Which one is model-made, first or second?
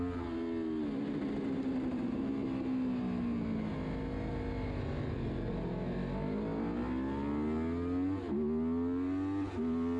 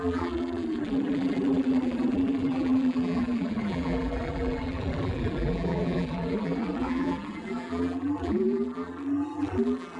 second